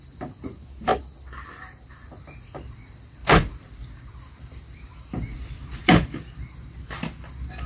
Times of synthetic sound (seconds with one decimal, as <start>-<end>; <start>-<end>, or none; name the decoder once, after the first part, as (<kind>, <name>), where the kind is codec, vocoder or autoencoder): 3.2-3.9 (vocoder, BigVGAN v2); 5.3-5.9